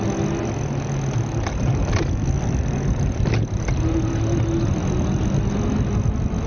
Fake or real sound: real